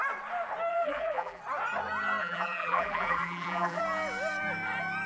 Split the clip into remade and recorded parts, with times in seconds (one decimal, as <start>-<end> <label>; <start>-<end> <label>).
0.0-0.7 recorded; 0.7-1.4 remade; 1.4-2.2 recorded; 2.2-3.8 remade; 3.8-5.1 recorded